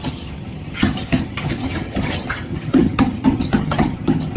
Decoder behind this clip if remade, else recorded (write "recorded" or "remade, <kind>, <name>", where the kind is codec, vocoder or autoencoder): remade, vocoder, HiFi-GAN